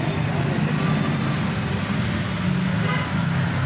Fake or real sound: real